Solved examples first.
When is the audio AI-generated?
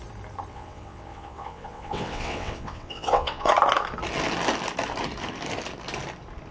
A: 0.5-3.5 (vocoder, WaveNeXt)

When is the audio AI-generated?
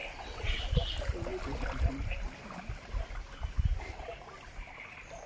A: 0.0-0.6 (vocoder, WaveNeXt)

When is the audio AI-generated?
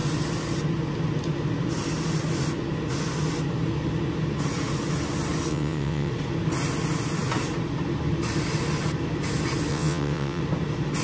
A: 5.5-6.1 (vocoder, WaveNeXt); 9.7-10.4